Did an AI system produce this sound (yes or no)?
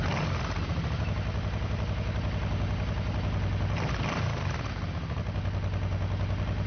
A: no